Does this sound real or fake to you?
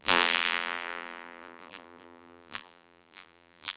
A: fake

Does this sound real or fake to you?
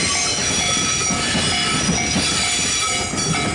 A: real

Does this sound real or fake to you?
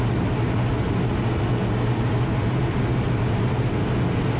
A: real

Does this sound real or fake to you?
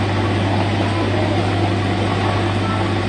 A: real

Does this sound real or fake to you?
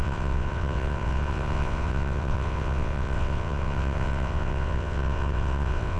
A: fake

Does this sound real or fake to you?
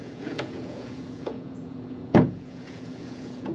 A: fake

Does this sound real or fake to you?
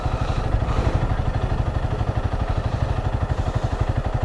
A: real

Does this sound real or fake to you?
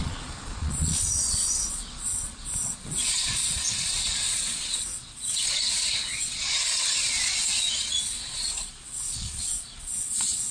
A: fake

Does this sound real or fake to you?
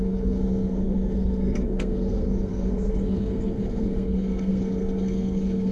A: fake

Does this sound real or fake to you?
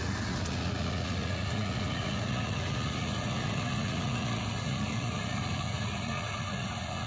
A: fake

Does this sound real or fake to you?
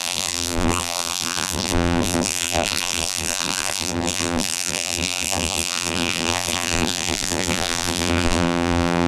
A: fake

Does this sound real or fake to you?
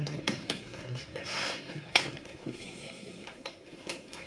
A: fake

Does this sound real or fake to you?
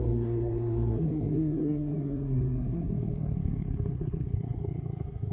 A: fake